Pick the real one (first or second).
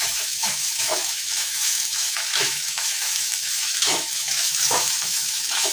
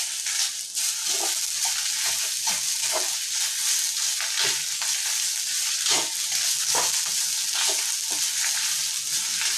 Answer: second